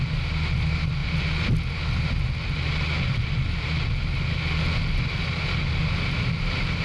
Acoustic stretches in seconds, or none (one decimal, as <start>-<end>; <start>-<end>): 0.0-6.8